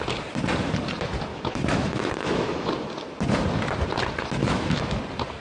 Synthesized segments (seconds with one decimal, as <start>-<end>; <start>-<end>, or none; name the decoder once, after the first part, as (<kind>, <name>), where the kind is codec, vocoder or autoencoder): 1.3-2.7 (autoencoder, DAC-VAE); 4.4-5.0